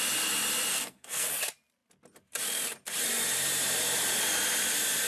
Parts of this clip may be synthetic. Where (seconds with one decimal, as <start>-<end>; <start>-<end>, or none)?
0.7-1.3